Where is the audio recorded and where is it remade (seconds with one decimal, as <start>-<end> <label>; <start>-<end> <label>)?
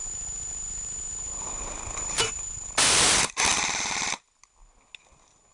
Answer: 0.0-5.5 recorded